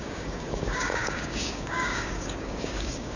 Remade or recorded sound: remade